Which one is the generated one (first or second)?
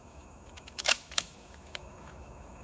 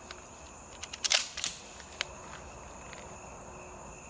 first